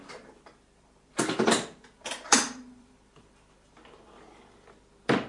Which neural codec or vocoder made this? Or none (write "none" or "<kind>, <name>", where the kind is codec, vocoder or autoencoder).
vocoder, BigVGAN v2